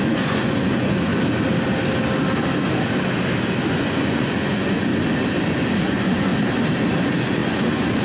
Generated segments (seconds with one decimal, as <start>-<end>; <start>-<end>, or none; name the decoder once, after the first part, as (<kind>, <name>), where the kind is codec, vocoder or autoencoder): 0.0-1.1 (vocoder, Vocos); 3.7-4.9; 5.8-6.3; 7.0-8.0